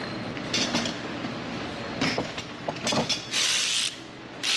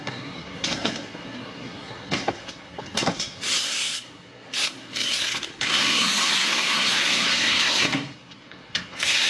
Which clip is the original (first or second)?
first